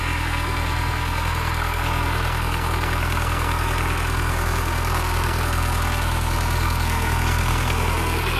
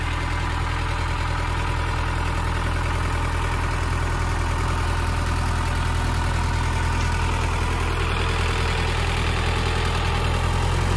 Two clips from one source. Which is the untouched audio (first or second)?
second